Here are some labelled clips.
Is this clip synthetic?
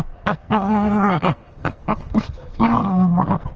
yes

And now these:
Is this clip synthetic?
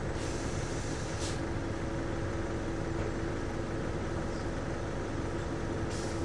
no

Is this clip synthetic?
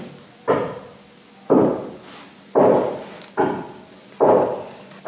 no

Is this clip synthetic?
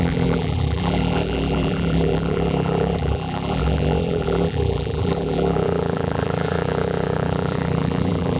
yes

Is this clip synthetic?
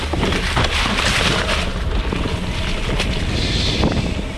no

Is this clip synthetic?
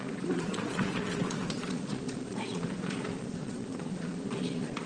yes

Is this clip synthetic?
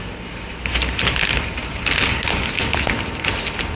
no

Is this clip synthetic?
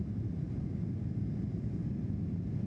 no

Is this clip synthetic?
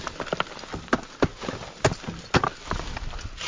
no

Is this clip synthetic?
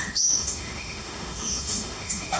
yes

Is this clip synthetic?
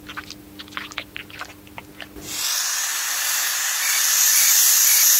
no